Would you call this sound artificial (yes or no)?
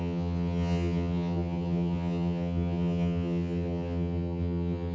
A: yes